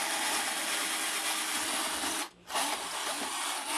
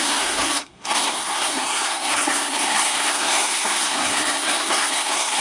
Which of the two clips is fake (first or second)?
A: second